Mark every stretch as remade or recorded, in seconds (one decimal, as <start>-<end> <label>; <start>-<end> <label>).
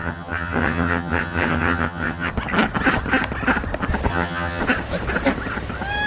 0.0-2.3 remade; 2.3-4.1 recorded; 4.1-4.6 remade; 4.6-6.1 recorded